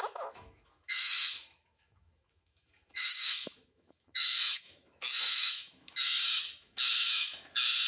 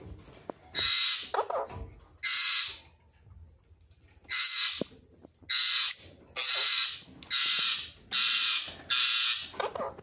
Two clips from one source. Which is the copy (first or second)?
first